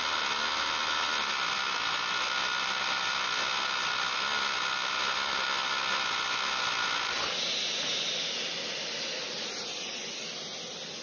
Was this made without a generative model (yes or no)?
yes